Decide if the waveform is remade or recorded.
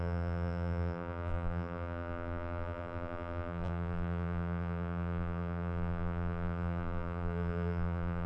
remade